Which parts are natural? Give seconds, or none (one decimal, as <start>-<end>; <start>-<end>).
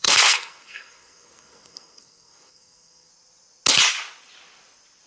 3.1-5.1